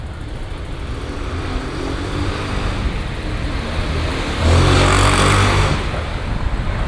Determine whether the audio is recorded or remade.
recorded